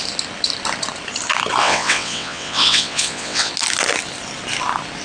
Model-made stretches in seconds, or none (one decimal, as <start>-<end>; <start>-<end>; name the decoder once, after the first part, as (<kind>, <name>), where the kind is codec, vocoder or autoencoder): 1.6-3.5 (vocoder, WaveNeXt)